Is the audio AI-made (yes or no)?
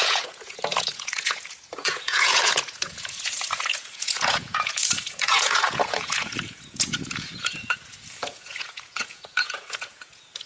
yes